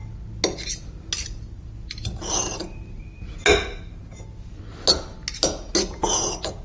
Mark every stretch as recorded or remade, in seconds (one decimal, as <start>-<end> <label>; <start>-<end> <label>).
0.0-6.6 recorded